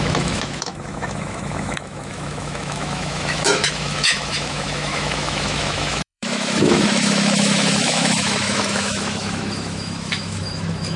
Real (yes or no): no